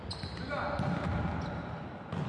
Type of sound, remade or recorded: recorded